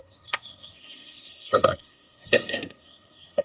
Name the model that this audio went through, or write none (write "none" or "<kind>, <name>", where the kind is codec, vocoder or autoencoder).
codec, SNAC